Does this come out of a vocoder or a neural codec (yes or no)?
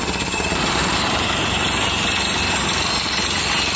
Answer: no